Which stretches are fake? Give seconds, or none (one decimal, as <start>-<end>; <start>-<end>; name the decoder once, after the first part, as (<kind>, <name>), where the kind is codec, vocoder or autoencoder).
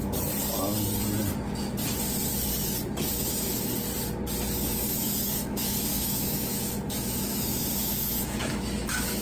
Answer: 3.1-3.7 (autoencoder, DAC-VAE); 4.5-9.2